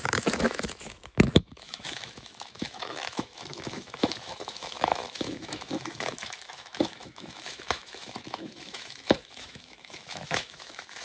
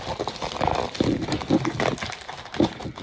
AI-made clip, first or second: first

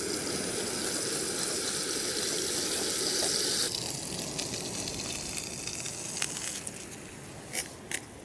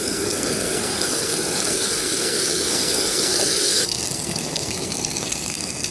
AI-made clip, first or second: second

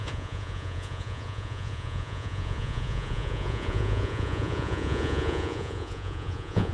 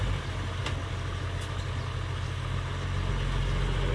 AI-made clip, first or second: first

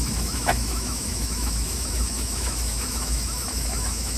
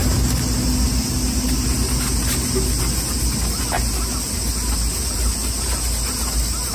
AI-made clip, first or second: first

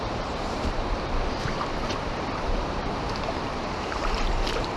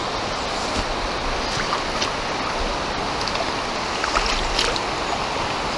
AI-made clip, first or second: first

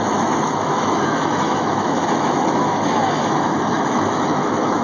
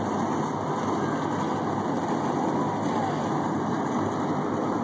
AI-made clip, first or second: first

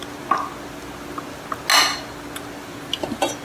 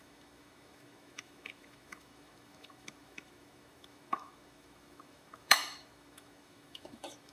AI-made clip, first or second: second